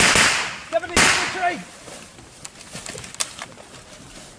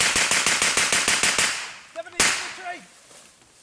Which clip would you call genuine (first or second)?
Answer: second